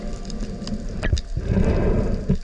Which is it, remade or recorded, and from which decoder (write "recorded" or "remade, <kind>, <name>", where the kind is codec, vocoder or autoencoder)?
recorded